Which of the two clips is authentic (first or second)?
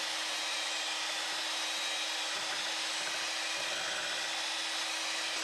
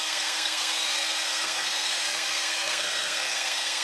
first